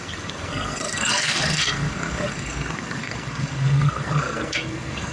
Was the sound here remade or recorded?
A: remade